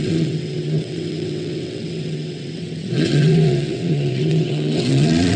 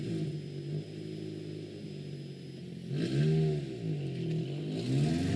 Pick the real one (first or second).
second